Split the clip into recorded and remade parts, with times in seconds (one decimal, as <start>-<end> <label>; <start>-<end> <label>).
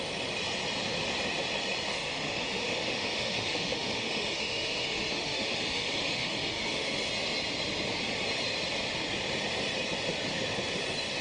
0.0-1.9 recorded; 1.9-7.1 remade; 7.1-11.2 recorded